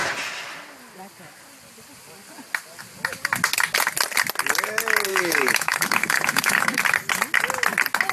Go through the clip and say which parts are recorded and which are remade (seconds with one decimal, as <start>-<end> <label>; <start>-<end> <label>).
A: 0.0-5.1 recorded; 5.1-6.8 remade; 6.8-8.1 recorded